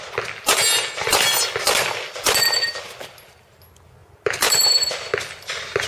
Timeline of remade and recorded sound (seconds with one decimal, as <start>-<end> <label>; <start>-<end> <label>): 0.0-5.9 recorded